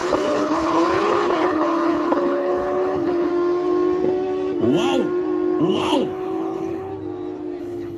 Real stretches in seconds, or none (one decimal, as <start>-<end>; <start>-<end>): 3.3-5.6; 6.9-7.6